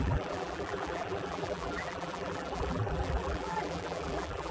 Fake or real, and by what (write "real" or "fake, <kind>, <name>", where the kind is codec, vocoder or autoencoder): fake, vocoder, BigVGAN v2